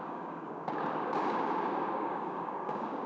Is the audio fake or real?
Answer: fake